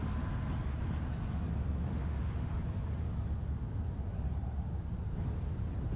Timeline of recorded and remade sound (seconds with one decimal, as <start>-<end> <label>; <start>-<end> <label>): 0.0-1.9 recorded; 1.9-2.5 remade; 2.5-6.0 recorded